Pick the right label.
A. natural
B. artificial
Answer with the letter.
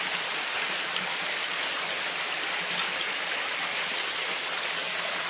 A